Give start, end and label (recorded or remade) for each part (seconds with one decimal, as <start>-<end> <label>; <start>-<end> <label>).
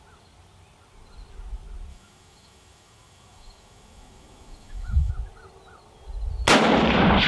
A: 0.0-1.9 recorded; 1.9-5.1 remade; 5.1-7.3 recorded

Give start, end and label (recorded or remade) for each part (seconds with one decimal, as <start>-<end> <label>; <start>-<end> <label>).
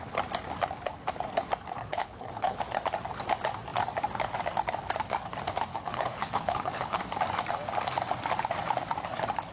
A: 0.0-1.8 recorded; 1.8-2.6 remade; 2.6-5.7 recorded; 5.7-7.0 remade; 7.0-9.5 recorded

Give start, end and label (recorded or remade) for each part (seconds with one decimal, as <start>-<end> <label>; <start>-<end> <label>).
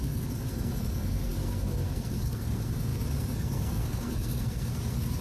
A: 0.0-5.2 remade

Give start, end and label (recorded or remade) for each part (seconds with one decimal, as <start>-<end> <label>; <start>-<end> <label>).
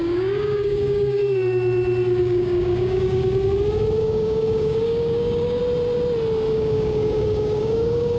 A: 0.0-1.2 remade; 1.2-2.2 recorded; 2.2-3.2 remade; 3.2-4.0 recorded; 4.0-5.6 remade; 5.6-6.5 recorded; 6.5-8.2 remade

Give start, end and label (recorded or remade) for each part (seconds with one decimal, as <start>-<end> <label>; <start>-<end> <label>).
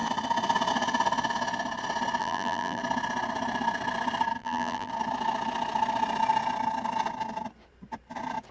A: 0.0-2.2 recorded; 2.2-2.8 remade; 2.8-4.4 recorded; 4.4-4.9 remade; 4.9-8.5 recorded